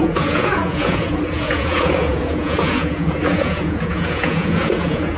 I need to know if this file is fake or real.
fake